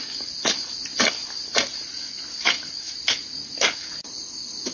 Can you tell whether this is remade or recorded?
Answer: recorded